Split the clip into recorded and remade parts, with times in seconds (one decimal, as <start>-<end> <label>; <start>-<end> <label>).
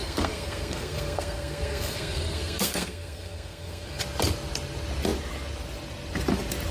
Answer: 0.0-4.0 remade; 4.0-6.7 recorded